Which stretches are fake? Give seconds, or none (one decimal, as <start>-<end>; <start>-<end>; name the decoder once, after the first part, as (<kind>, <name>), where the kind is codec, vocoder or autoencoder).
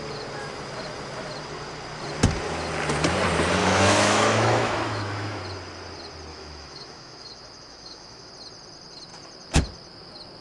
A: 3.6-5.4 (autoencoder, DAC-VAE); 6.3-8.3